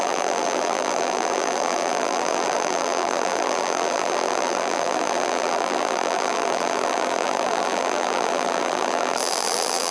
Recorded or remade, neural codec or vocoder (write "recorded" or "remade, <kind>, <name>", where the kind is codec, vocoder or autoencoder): remade, vocoder, BigVGAN v2